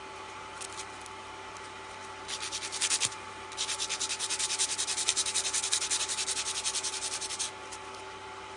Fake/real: real